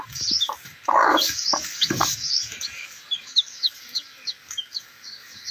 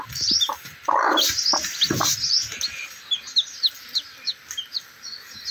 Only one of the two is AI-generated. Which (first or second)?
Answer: first